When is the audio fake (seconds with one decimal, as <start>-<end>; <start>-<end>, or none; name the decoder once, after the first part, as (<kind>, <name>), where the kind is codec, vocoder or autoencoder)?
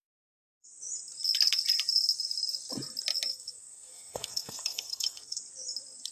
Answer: 3.3-5.4 (codec, SNAC)